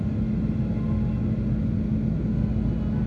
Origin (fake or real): real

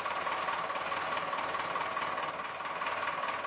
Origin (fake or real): real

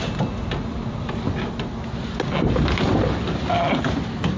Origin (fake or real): real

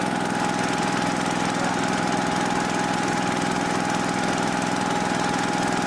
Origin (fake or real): real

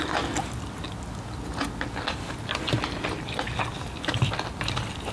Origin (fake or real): real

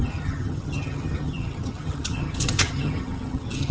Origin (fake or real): fake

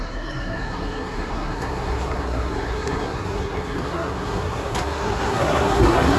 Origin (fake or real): fake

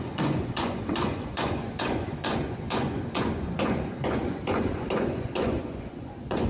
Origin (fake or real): fake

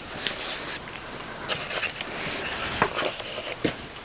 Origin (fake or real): real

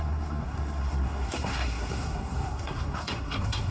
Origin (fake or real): fake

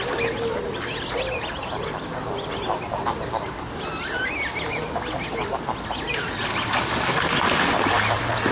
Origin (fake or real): real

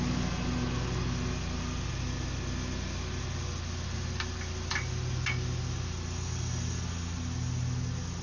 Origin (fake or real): real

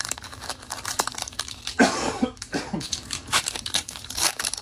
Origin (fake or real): fake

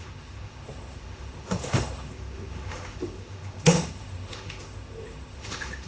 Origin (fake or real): fake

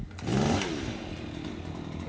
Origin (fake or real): real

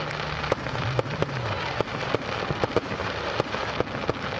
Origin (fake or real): real